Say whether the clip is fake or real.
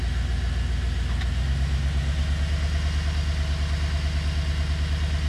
real